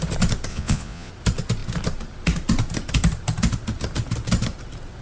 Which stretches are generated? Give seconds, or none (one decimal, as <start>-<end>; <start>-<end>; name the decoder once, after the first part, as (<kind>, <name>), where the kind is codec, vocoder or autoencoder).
0.5-1.1 (vocoder, Vocos)